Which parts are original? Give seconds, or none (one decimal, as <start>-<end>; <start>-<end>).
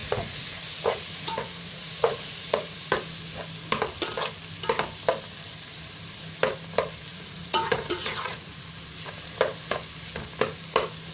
2.9-7.1; 8.6-11.1